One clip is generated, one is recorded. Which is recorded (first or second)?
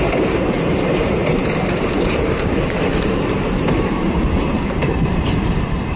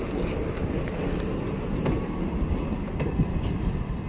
second